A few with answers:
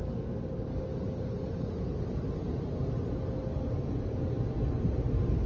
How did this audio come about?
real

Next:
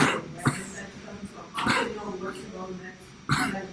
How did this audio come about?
real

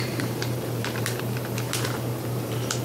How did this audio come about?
fake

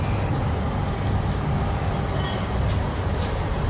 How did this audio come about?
real